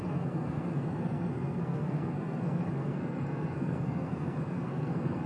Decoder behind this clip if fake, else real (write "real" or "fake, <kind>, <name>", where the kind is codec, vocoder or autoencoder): fake, codec, SNAC